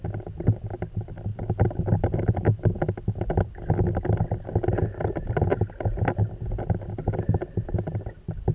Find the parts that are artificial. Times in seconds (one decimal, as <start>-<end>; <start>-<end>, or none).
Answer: none